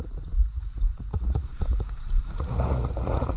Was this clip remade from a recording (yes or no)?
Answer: yes